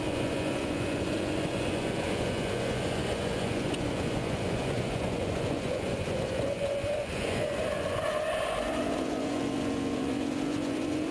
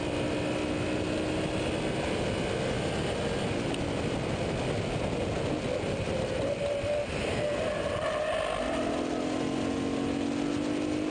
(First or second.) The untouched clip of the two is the second